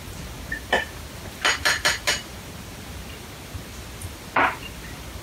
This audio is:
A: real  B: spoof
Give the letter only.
A